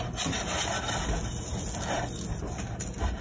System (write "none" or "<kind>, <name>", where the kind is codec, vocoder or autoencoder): none